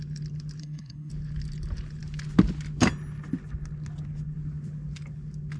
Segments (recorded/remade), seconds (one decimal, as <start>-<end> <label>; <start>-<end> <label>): 0.0-0.6 recorded; 0.6-1.1 remade; 1.1-5.6 recorded